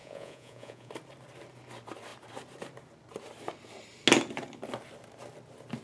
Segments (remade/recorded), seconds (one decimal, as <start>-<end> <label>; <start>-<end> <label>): 0.0-0.9 remade; 0.9-5.8 recorded